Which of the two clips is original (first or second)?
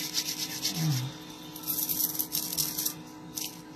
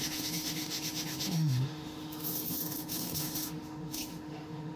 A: first